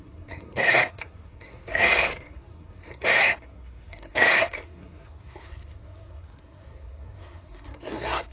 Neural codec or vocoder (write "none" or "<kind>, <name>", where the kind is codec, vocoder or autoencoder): codec, SNAC